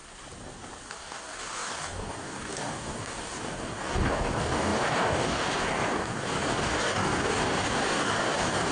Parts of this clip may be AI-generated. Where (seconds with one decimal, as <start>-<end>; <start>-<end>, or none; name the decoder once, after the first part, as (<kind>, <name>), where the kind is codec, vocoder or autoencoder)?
0.9-8.7 (codec, DAC)